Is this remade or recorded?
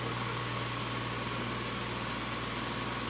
recorded